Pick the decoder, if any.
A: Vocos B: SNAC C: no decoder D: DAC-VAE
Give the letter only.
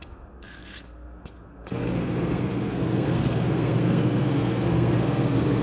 B